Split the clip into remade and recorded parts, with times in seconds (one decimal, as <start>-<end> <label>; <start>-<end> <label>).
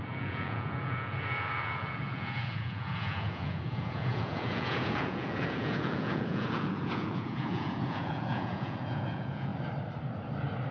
0.0-9.5 remade; 9.5-10.7 recorded